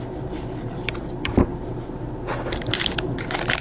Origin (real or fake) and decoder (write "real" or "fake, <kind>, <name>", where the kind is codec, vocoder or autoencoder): fake, vocoder, BigVGAN v2